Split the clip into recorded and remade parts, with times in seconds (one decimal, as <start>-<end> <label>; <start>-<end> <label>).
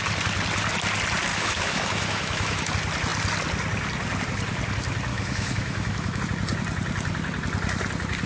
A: 0.0-1.3 recorded; 1.3-2.7 remade; 2.7-5.1 recorded; 5.1-6.2 remade; 6.2-8.3 recorded